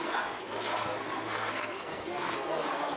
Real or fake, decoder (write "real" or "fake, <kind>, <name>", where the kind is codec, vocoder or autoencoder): fake, codec, SNAC